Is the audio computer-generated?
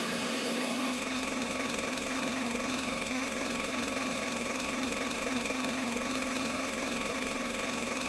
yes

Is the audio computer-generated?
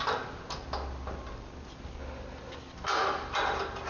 no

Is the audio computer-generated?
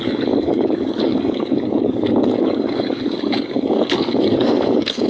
yes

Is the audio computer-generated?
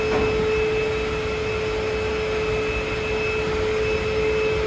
no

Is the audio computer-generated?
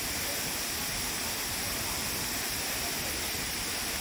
no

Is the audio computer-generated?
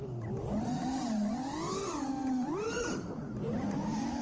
no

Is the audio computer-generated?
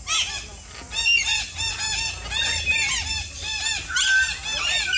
no